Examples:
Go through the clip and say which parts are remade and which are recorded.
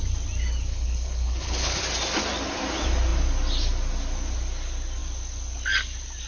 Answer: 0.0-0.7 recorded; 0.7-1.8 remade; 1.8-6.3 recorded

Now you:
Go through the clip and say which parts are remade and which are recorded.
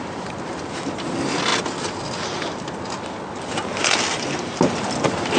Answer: 0.0-5.4 recorded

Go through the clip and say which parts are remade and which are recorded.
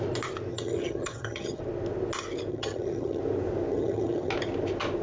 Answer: 0.0-0.5 recorded; 0.5-1.6 remade; 1.6-2.5 recorded; 2.5-3.2 remade; 3.2-3.7 recorded; 3.7-4.3 remade; 4.3-5.0 recorded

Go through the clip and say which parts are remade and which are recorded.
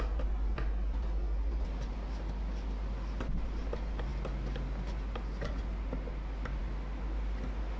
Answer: 0.0-7.8 recorded